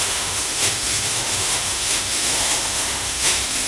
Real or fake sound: fake